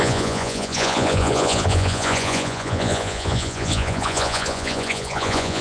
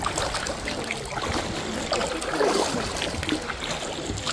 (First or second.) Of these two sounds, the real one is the second